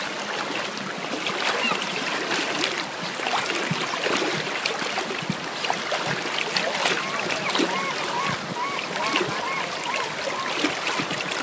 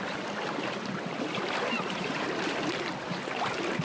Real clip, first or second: first